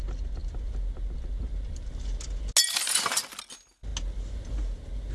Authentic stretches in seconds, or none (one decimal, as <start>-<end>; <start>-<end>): 0.0-5.1